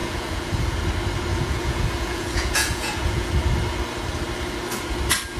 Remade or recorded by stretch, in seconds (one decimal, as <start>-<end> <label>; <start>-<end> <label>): 0.0-0.8 remade; 0.8-1.3 recorded; 1.3-3.3 remade; 3.3-5.4 recorded